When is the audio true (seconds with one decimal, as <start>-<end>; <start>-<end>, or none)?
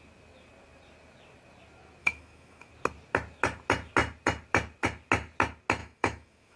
0.0-2.0; 2.7-5.8